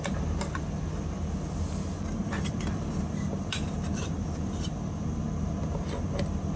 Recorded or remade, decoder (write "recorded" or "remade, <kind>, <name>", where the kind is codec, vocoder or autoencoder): recorded